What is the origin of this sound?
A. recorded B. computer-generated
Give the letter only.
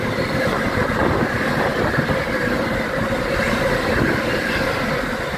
A